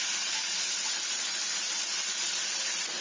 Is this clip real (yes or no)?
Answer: yes